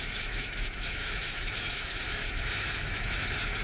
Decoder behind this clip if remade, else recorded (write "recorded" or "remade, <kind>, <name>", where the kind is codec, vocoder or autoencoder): remade, autoencoder, DAC-VAE